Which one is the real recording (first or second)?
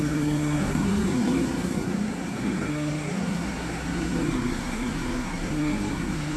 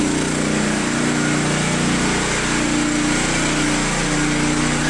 second